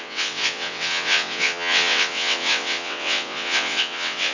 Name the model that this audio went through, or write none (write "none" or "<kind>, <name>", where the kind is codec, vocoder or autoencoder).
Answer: vocoder, WaveNeXt